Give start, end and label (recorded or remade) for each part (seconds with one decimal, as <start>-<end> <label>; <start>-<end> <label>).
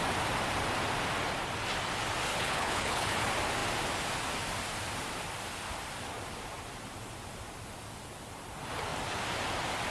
0.0-2.3 recorded; 2.3-3.2 remade; 3.2-9.9 recorded